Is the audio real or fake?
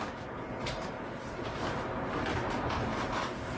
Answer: real